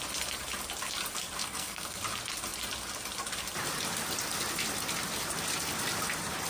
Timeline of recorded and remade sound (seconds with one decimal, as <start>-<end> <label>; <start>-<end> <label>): 0.0-1.4 recorded; 1.4-2.0 remade; 2.0-6.5 recorded